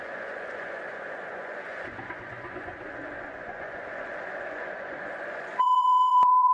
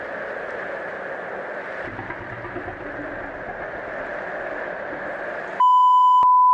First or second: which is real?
second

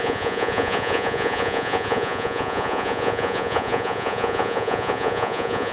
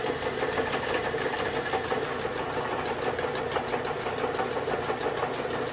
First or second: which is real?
second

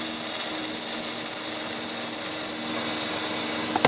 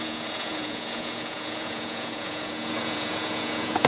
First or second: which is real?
first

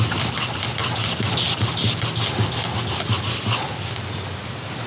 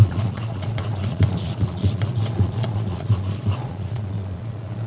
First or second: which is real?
first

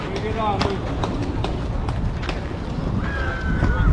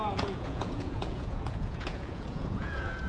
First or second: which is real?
first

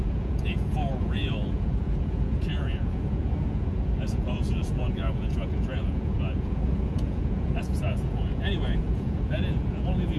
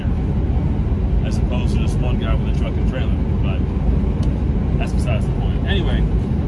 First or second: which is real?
second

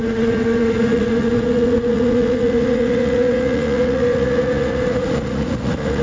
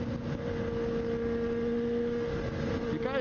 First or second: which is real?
second